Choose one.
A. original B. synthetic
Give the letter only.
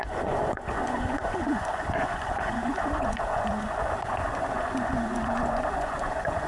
B